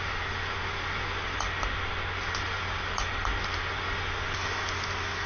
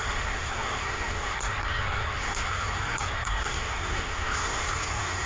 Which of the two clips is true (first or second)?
first